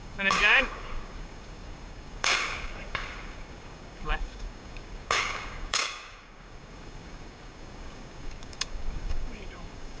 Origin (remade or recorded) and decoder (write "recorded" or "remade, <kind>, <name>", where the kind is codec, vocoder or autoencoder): remade, codec, DAC